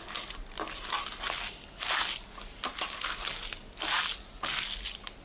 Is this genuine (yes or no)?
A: yes